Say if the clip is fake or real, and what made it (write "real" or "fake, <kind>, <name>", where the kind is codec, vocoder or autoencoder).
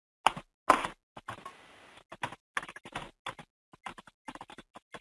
real